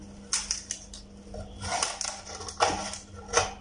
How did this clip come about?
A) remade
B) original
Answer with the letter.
B